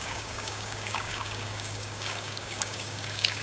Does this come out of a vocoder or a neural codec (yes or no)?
yes